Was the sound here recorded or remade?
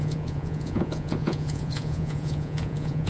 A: remade